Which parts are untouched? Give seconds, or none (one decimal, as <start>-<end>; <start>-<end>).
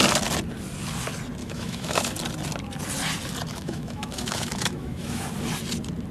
0.0-1.4; 2.1-3.5; 5.2-6.1